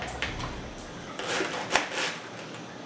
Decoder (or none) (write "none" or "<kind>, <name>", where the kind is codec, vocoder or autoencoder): none